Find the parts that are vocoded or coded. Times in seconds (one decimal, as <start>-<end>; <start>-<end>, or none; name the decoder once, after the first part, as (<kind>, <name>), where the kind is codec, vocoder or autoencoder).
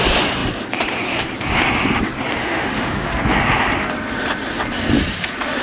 2.4-3.1 (autoencoder, DAC-VAE)